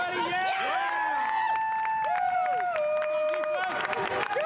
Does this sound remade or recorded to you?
recorded